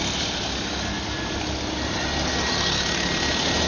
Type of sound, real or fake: real